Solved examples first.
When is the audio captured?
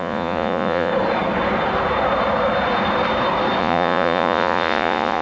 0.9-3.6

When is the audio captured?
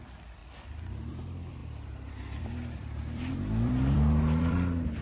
0.4-1.1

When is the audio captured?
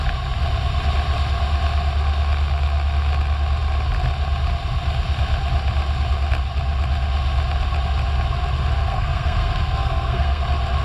0.0-8.9; 10.4-10.8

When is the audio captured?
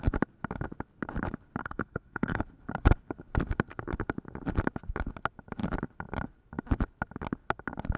0.0-1.6; 2.4-8.0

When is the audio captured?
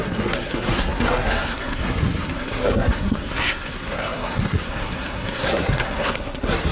none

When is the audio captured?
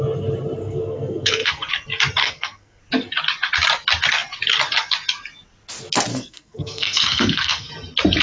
0.0-0.6; 1.7-2.2; 2.8-6.1; 7.7-8.2